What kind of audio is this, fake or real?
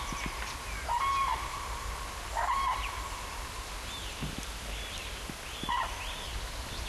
real